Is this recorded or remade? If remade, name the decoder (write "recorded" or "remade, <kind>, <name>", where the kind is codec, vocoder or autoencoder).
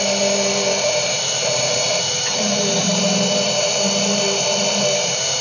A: remade, vocoder, BigVGAN v2